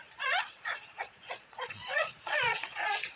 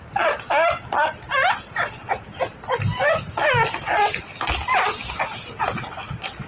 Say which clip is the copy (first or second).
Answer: first